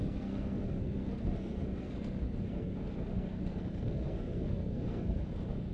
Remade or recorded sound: remade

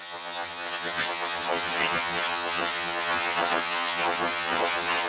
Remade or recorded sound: remade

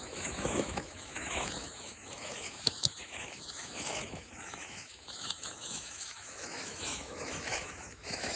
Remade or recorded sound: remade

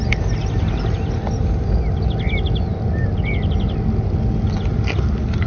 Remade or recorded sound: recorded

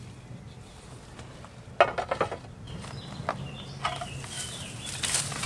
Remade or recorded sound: recorded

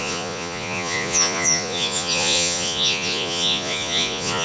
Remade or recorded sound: remade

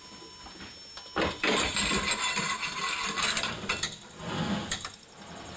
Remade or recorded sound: recorded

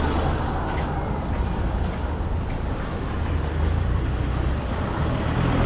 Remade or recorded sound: recorded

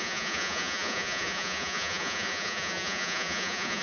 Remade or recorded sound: remade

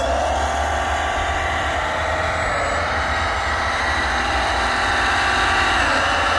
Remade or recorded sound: recorded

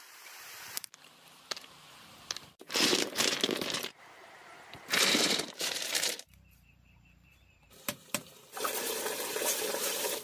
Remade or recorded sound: remade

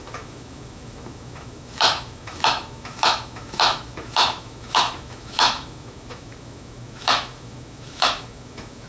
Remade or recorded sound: remade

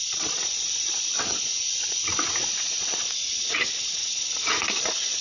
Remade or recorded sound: remade